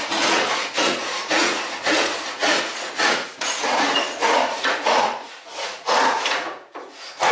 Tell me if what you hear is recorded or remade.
remade